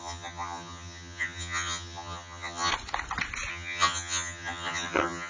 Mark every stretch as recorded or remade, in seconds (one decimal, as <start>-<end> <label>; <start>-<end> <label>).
0.0-2.7 remade; 2.7-3.5 recorded; 3.5-5.3 remade

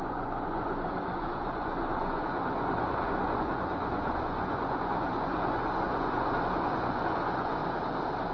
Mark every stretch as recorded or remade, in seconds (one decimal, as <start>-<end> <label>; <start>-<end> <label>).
0.0-7.6 remade; 7.6-8.3 recorded

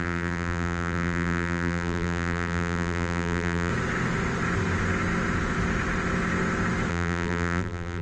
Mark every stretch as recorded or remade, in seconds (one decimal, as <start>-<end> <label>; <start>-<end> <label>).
0.0-3.7 remade; 3.7-6.9 recorded; 6.9-8.0 remade

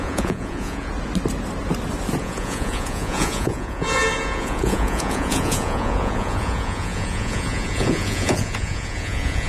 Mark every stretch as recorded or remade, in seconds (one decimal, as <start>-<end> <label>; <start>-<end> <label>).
0.0-0.9 remade; 0.9-2.2 recorded; 2.2-9.5 remade